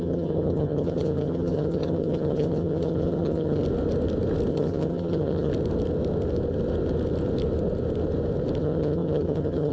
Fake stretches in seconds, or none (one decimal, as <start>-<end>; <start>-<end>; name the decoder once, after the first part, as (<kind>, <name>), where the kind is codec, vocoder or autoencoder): 0.0-3.6 (vocoder, HiFi-GAN); 4.5-5.5; 8.6-9.7